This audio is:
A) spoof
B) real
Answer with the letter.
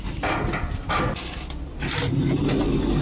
B